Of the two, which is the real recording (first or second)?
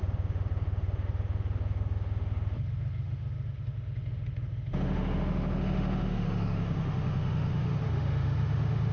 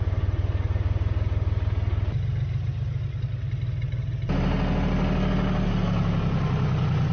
second